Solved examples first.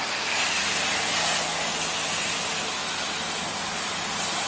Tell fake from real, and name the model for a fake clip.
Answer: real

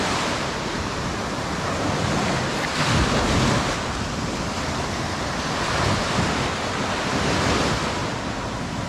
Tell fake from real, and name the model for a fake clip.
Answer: real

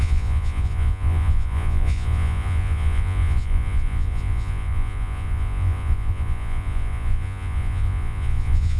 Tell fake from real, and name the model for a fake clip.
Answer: fake, vocoder, Vocos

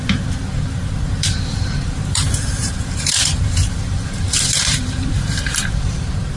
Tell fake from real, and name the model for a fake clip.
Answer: fake, vocoder, BigVGAN v2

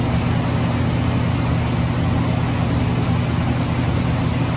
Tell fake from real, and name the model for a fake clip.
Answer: real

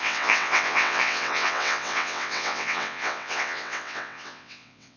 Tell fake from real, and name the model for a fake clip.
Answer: fake, vocoder, WaveNeXt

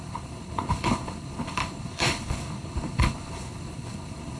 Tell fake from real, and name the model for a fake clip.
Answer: fake, codec, HILCodec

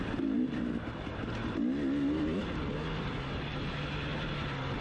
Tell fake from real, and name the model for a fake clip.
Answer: real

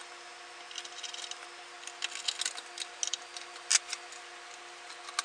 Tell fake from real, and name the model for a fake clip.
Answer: real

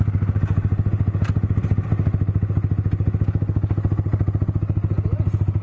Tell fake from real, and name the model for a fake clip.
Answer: real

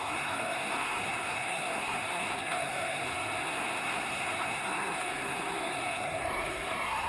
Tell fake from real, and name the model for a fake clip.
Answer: fake, codec, SNAC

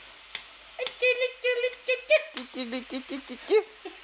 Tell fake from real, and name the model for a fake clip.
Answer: real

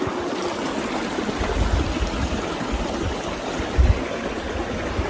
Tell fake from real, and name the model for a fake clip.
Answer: real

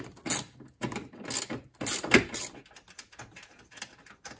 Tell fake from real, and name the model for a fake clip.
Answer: real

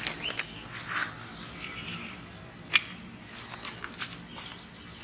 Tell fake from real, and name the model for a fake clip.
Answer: real